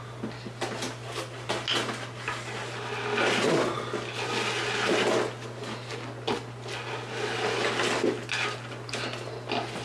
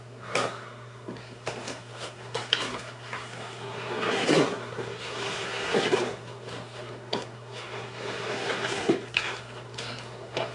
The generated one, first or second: second